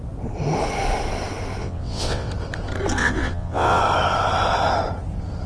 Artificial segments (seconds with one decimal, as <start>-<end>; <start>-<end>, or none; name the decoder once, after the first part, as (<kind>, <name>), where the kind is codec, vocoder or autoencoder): 1.6-2.3 (vocoder, WaveNeXt); 3.0-3.8